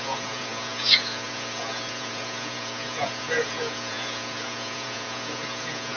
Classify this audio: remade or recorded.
remade